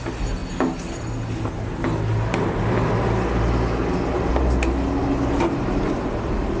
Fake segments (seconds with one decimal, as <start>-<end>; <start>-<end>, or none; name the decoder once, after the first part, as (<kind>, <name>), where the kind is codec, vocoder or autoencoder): none